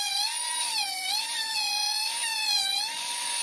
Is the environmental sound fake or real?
fake